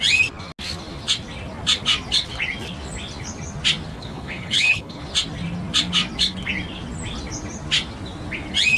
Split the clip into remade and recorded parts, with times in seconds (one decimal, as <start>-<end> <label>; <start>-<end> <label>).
0.0-3.9 recorded; 3.9-5.0 remade; 5.0-8.8 recorded

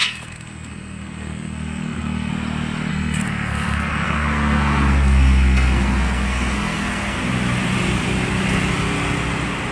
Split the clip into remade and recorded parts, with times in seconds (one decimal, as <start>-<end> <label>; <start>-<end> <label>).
0.0-2.3 remade; 2.3-2.9 recorded; 2.9-7.2 remade; 7.2-9.7 recorded

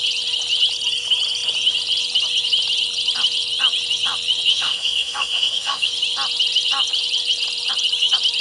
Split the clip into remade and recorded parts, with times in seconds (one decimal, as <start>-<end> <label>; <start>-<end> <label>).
0.0-4.5 recorded; 4.5-5.9 remade; 5.9-8.4 recorded

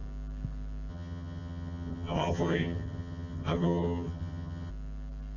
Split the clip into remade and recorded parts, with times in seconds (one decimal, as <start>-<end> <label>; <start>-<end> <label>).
0.0-0.9 recorded; 0.9-4.7 remade; 4.7-5.4 recorded

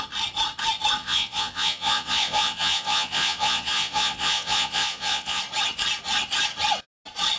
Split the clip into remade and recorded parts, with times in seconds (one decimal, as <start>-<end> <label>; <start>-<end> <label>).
0.0-1.0 recorded; 1.0-5.4 remade; 5.4-7.4 recorded

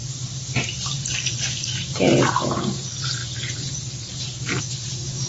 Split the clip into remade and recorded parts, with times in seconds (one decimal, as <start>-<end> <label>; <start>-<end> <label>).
0.0-2.5 remade; 2.5-3.2 recorded; 3.2-4.6 remade; 4.6-5.3 recorded